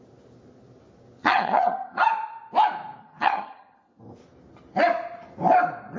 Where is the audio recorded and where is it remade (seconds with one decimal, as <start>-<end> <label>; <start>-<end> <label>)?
0.0-1.2 recorded; 1.2-2.0 remade; 2.0-3.0 recorded; 3.0-4.0 remade; 4.0-6.0 recorded